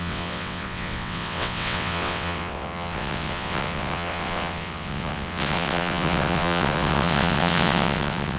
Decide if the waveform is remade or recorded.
remade